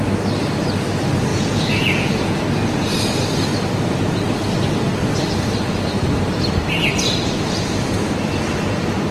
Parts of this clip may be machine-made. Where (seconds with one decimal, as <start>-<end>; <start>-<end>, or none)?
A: 1.3-2.4